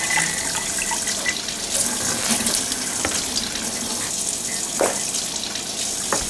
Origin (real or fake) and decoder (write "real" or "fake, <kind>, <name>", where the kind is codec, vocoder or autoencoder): real